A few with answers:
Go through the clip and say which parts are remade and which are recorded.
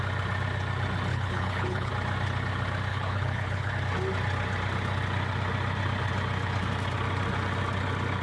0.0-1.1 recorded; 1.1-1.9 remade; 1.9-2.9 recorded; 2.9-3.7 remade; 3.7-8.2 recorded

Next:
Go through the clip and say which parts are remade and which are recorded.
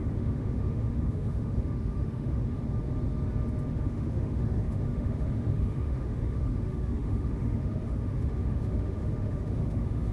0.0-2.6 remade; 2.6-3.7 recorded; 3.7-10.1 remade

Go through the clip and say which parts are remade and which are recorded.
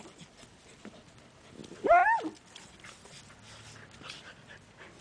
0.0-5.0 recorded